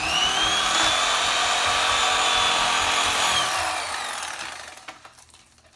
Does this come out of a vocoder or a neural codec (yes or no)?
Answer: no